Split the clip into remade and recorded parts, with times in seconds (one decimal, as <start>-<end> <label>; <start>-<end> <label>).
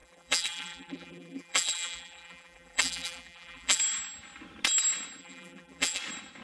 0.0-3.8 remade; 3.8-5.2 recorded; 5.2-6.0 remade; 6.0-6.4 recorded